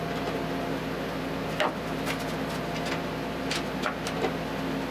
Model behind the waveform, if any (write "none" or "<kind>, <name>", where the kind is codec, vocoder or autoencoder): none